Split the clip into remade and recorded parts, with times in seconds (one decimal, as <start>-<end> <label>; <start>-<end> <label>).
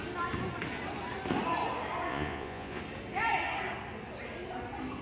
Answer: 0.0-2.1 recorded; 2.1-2.8 remade; 2.8-5.0 recorded